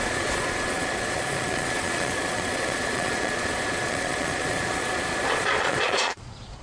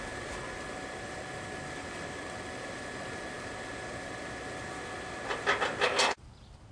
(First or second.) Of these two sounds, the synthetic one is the first